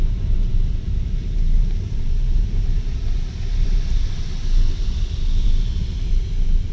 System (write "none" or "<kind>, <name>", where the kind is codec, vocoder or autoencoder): vocoder, BigVGAN v2